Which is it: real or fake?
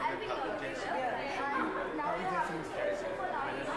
real